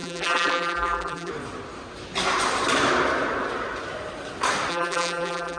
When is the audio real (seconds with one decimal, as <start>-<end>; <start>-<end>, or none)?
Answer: 1.3-4.7